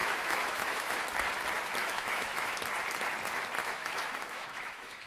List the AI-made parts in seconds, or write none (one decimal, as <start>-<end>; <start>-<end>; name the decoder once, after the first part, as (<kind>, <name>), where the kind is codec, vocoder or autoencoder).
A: 0.0-1.0 (autoencoder, DAC-VAE); 1.8-2.6; 3.6-5.1